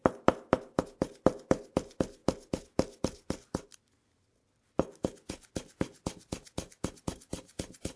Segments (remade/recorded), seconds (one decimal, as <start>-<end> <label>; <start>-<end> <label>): 0.0-8.0 recorded